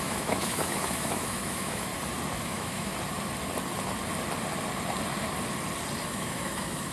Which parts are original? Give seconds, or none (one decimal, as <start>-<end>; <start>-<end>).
1.9-2.4; 2.9-6.1